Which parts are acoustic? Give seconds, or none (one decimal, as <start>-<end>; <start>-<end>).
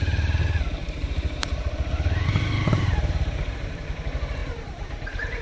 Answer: 0.0-0.8; 4.0-4.4